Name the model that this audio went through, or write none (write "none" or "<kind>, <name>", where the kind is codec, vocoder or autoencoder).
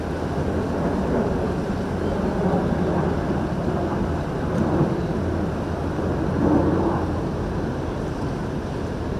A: none